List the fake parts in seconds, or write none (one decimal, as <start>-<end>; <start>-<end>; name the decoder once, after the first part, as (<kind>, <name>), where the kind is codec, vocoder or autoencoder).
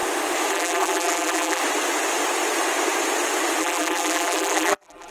0.5-1.6 (vocoder, BigVGAN v2); 3.6-5.1